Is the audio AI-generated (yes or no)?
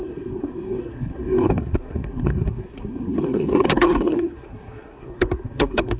yes